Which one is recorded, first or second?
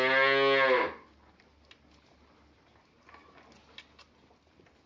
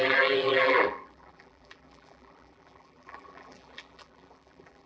first